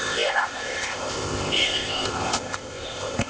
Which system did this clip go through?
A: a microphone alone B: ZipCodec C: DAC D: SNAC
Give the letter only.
B